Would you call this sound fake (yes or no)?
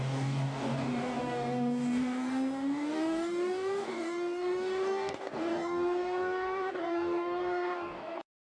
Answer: yes